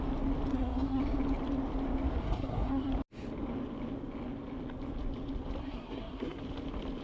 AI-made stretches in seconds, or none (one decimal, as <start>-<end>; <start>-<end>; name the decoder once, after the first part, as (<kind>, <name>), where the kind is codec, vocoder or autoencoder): 0.5-1.0 (codec, SNAC); 2.2-2.9; 5.6-6.4